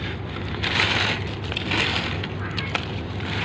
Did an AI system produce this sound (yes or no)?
no